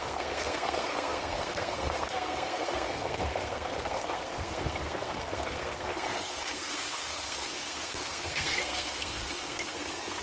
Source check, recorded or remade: remade